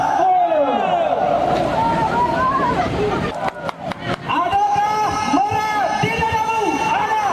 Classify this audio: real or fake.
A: fake